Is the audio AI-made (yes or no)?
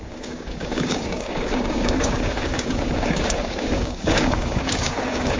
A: yes